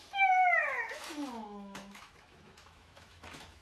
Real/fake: fake